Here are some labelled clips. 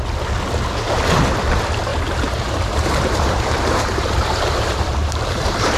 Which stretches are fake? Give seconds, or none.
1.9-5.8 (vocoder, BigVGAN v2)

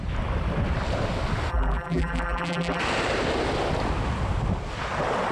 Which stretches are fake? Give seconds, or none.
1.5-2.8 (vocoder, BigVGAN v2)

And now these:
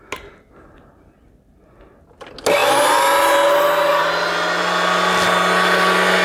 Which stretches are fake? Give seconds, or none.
none